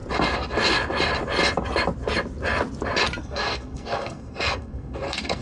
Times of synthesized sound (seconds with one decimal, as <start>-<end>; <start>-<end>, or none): 3.2-5.4

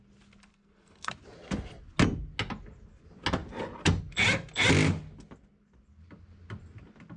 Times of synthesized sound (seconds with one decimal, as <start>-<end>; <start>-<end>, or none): 0.5-1.1

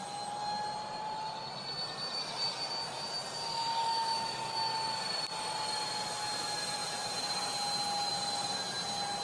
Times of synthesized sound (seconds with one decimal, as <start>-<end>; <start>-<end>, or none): none

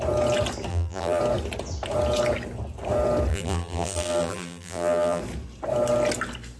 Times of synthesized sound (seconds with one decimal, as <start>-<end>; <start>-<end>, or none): 0.7-1.2; 3.3-5.2

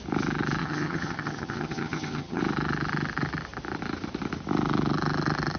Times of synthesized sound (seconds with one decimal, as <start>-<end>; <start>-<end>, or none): 0.6-2.4

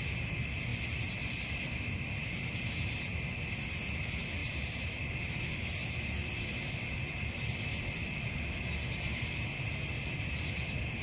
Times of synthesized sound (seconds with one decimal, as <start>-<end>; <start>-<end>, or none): 4.4-5.0

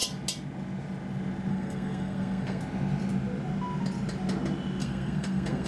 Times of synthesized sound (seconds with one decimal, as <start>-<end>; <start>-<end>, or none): 1.5-2.6; 4.8-5.7

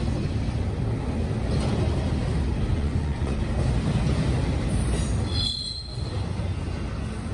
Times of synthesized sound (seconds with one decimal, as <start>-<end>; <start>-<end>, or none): 2.7-3.4